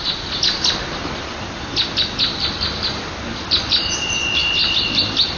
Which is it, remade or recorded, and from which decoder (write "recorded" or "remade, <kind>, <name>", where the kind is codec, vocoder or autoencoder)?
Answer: recorded